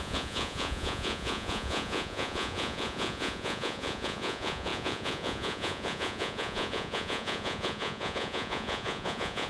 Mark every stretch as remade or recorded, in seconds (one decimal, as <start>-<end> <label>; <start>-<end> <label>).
0.0-9.5 remade